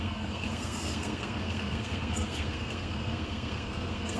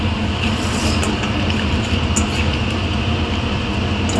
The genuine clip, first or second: second